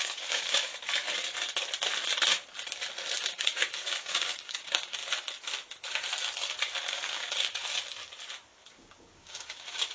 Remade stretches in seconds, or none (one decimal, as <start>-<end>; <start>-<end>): 0.0-0.7; 3.2-5.0; 6.8-7.6; 8.7-9.9